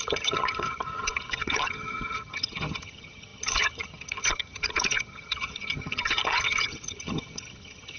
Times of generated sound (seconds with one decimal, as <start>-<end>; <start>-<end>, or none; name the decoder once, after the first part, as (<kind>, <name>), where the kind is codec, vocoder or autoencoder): 0.0-8.0 (vocoder, HiFi-GAN)